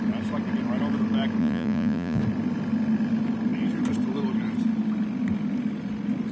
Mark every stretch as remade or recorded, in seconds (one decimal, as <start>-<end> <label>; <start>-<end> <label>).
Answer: 0.0-1.4 recorded; 1.4-2.2 remade; 2.2-6.3 recorded